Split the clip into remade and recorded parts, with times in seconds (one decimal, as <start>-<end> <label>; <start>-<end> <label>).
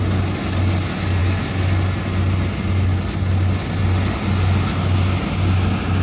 0.0-6.0 recorded